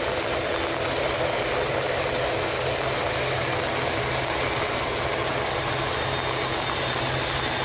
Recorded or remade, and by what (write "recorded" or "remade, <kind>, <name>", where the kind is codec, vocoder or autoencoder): recorded